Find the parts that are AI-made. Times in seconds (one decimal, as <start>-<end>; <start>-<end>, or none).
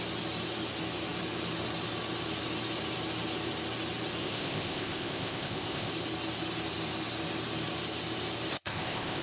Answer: 4.2-5.9; 8.5-9.2